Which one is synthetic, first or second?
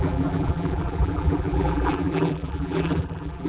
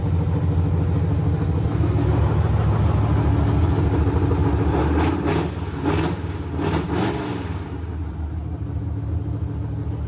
first